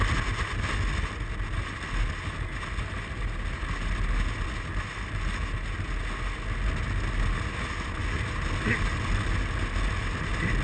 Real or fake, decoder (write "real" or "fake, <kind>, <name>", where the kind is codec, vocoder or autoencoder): real